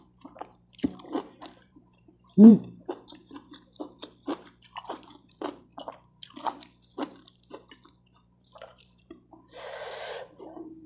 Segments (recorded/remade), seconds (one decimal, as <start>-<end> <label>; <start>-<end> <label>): 0.0-5.7 remade; 5.7-7.3 recorded; 7.3-10.9 remade